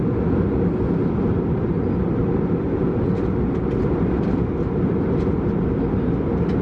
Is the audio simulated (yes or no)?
no